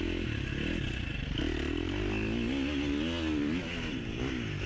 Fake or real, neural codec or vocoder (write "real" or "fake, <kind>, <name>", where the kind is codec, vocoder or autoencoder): real